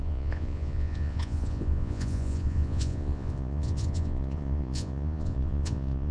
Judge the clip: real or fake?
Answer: fake